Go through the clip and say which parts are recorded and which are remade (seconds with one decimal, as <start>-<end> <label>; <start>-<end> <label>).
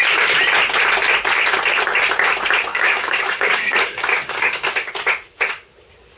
0.0-2.7 recorded; 2.7-4.9 remade; 4.9-6.2 recorded